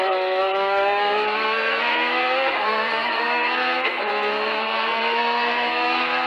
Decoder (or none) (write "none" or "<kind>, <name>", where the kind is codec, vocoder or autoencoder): codec, SNAC